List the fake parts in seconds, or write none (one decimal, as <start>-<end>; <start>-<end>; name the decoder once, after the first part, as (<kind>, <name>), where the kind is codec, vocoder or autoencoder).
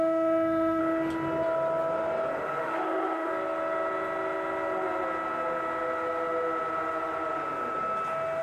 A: 0.0-0.8 (autoencoder, DAC-VAE); 2.6-3.3